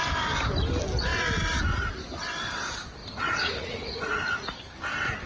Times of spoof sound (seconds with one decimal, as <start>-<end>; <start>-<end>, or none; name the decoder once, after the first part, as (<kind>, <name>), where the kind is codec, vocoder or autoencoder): 3.0-4.7 (vocoder, Vocos)